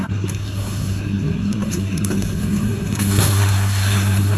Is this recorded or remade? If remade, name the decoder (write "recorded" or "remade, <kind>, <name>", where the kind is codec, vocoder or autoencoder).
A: remade, codec, SNAC